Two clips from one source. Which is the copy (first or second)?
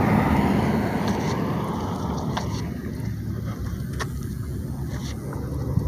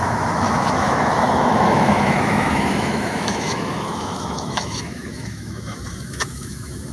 second